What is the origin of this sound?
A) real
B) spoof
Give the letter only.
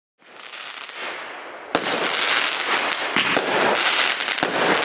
A